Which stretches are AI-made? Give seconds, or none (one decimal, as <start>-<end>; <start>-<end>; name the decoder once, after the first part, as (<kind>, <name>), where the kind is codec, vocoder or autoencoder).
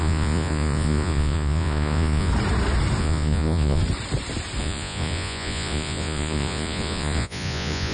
0.0-2.3 (vocoder, Vocos); 3.0-3.8; 4.6-7.9